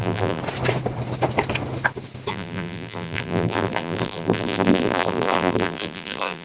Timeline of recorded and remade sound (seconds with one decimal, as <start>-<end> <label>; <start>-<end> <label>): 0.0-0.4 remade; 0.4-2.3 recorded; 2.3-6.4 remade